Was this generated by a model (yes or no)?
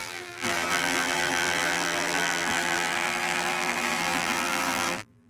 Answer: yes